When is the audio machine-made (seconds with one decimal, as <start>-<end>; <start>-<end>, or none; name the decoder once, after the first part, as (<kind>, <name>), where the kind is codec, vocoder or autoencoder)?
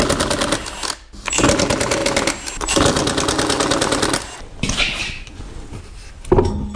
none